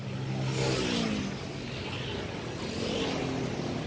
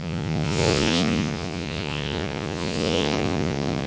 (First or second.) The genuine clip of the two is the first